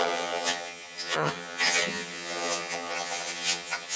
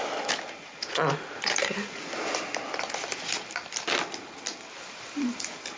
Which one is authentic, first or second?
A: second